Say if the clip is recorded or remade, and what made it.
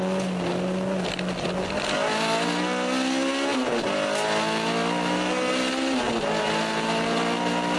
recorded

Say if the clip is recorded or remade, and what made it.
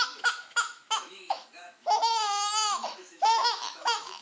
remade, autoencoder, DAC-VAE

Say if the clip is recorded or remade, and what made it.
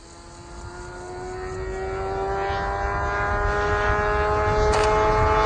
recorded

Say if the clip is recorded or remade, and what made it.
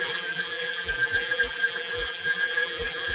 remade, vocoder, BigVGAN v2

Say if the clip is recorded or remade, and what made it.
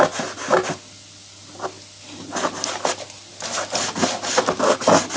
recorded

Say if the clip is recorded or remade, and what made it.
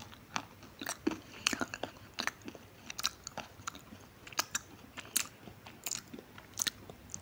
recorded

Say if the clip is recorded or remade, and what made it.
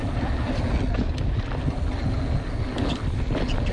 recorded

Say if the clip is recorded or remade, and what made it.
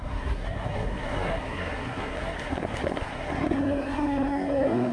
remade, codec, SNAC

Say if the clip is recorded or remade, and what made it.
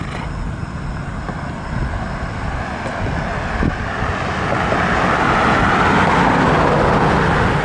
recorded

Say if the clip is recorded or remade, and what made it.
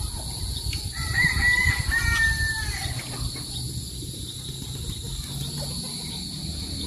recorded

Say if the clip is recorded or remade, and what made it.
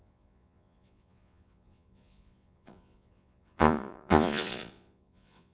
remade, vocoder, Vocos